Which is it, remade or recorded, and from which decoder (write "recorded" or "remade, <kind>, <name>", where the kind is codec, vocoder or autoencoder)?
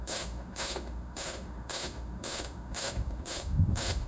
remade, autoencoder, DAC-VAE